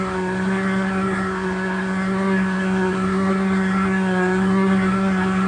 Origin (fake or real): fake